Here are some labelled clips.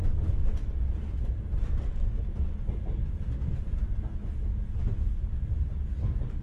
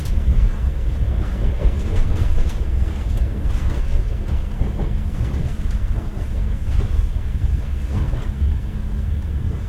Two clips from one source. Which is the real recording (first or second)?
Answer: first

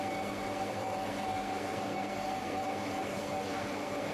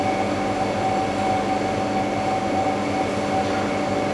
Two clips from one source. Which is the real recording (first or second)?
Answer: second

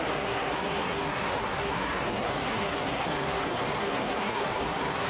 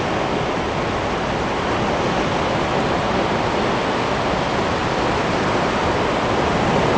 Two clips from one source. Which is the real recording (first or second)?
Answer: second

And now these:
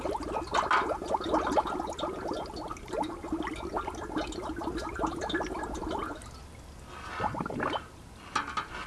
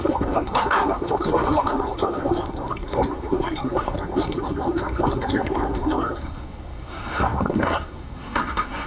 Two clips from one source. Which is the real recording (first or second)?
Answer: first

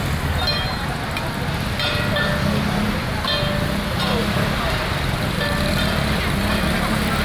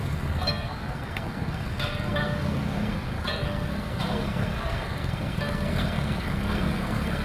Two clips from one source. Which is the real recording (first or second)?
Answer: first